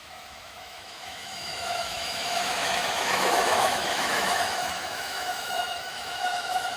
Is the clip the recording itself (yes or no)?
no